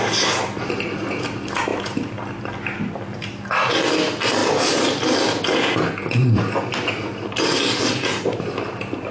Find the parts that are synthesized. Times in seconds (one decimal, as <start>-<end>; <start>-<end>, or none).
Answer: none